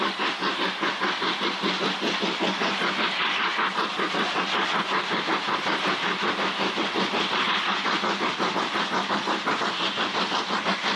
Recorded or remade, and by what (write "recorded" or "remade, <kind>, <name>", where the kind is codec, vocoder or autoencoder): recorded